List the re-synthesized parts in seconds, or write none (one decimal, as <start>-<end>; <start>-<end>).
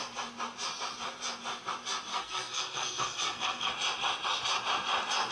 2.1-3.7